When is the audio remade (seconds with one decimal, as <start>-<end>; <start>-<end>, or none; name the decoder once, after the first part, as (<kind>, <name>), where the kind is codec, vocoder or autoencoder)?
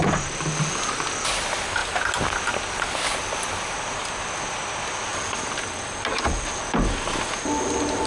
none